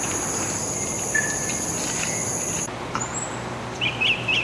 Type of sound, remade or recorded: recorded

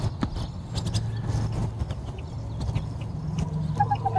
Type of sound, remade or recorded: recorded